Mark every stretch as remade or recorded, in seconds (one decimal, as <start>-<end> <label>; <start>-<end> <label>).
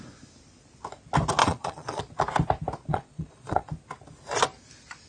0.0-1.4 recorded; 1.4-2.0 remade; 2.0-2.9 recorded; 2.9-3.7 remade; 3.7-5.1 recorded